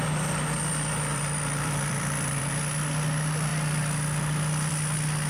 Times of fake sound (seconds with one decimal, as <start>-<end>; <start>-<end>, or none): 1.1-2.5